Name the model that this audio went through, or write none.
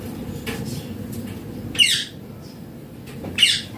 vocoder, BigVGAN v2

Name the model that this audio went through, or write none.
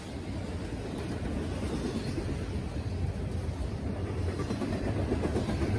none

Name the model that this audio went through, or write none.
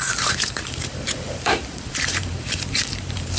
vocoder, BigVGAN v2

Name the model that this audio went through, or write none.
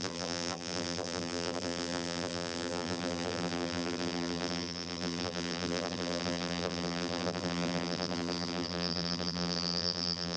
vocoder, BigVGAN v2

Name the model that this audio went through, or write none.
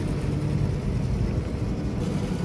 none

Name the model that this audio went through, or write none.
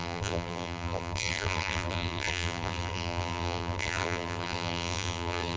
vocoder, BigVGAN v2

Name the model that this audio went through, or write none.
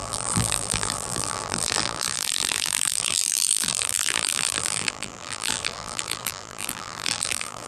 vocoder, BigVGAN v2